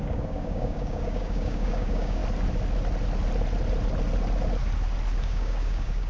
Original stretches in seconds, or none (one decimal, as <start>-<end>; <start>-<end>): 2.2-5.2